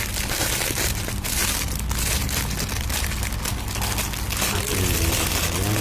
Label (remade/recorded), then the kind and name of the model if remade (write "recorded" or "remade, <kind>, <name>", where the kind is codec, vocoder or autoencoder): recorded